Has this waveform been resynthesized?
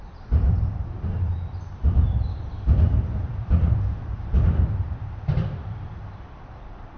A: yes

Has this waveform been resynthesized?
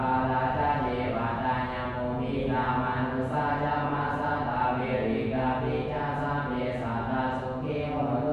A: no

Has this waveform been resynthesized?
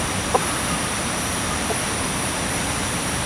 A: yes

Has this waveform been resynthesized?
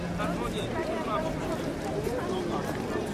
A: no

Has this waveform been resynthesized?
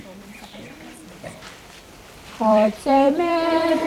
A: yes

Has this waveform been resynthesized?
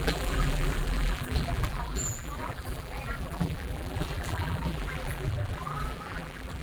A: yes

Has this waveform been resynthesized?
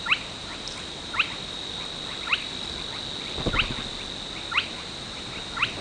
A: no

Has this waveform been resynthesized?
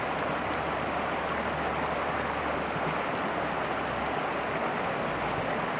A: no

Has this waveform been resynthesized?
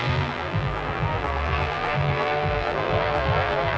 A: yes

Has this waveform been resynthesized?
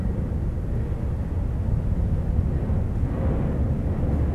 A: no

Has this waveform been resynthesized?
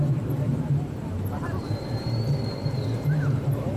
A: yes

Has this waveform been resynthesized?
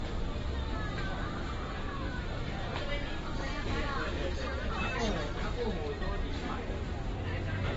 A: no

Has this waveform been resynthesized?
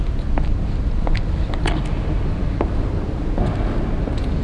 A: no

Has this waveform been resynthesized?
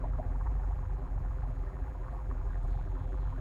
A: yes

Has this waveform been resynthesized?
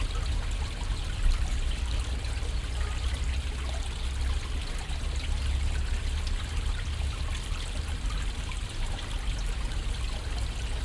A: no